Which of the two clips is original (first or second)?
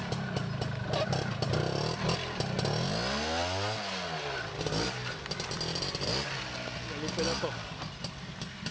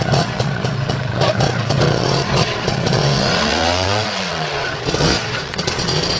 first